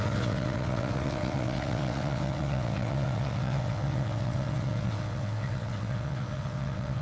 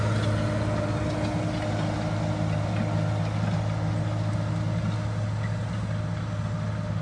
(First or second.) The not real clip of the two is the first